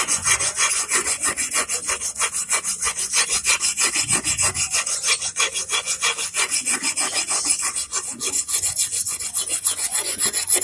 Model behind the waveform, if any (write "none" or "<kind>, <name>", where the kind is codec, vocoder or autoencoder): vocoder, Vocos